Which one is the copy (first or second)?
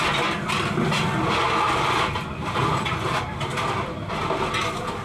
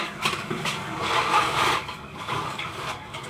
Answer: second